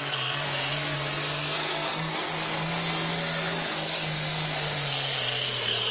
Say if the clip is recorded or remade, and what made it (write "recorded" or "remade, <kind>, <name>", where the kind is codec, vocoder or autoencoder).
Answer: remade, codec, SNAC